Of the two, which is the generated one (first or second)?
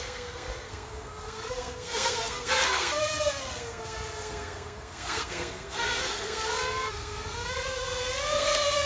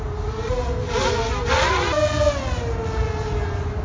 first